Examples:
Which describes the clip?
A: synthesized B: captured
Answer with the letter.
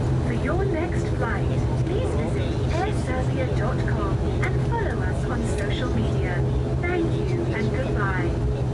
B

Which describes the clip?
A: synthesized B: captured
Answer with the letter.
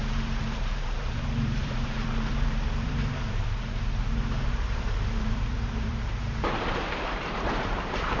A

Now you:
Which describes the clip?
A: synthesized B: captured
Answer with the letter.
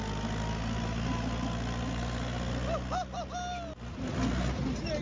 B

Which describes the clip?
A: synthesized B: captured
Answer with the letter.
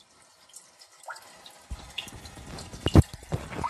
A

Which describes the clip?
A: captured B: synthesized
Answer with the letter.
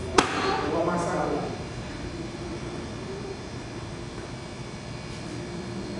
B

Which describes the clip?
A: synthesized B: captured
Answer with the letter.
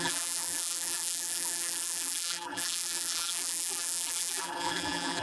A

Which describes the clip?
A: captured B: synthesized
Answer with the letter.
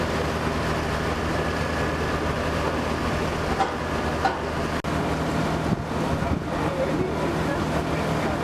A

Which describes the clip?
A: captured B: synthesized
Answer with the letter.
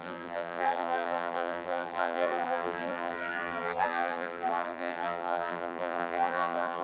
B